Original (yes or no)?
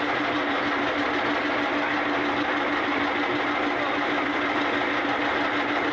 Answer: yes